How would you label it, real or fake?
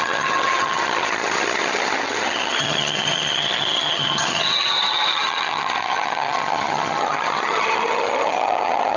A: fake